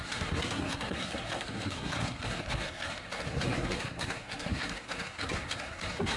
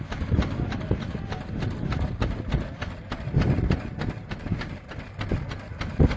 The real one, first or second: second